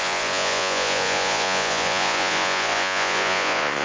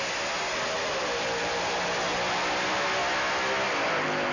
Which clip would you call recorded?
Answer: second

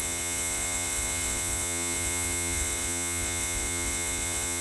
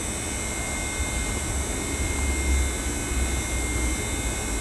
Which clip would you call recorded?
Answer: second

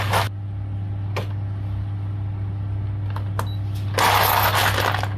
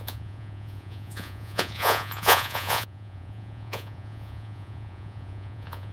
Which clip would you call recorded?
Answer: first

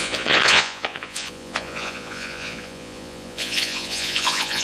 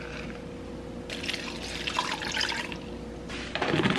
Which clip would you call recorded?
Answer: second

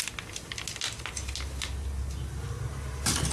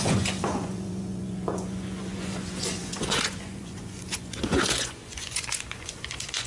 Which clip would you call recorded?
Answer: first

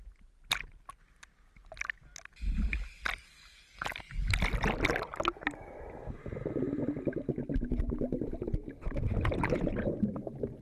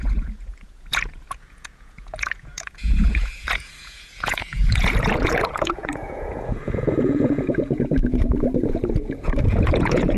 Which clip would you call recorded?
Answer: first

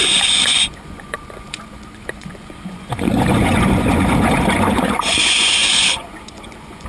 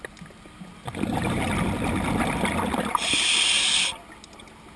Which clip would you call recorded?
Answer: second